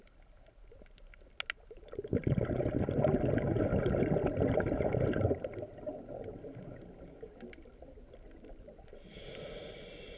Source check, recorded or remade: recorded